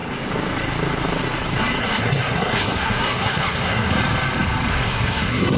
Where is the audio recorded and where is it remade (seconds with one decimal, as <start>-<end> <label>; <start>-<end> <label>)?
0.0-1.8 recorded; 1.8-3.9 remade; 3.9-4.7 recorded; 4.7-5.6 remade